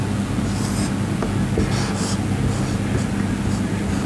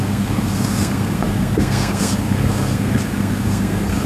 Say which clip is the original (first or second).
first